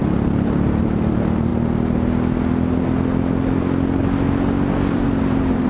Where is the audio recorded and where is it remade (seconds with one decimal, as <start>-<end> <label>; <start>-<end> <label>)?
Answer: 0.0-0.8 recorded; 0.8-1.5 remade; 1.5-4.9 recorded; 4.9-5.7 remade